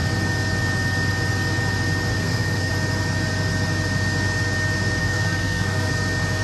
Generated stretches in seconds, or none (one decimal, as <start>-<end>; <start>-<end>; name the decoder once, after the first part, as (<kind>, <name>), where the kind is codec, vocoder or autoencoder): 2.1-2.7 (codec, SNAC); 5.0-5.9